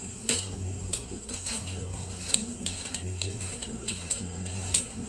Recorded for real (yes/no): no